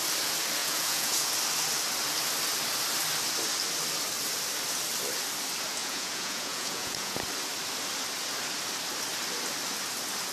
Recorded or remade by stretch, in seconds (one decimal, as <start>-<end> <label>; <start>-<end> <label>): 0.0-0.6 recorded; 0.6-1.3 remade; 1.3-5.8 recorded; 5.8-7.2 remade; 7.2-10.3 recorded